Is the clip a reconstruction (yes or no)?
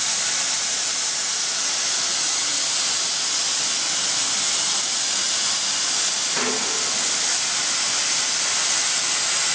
no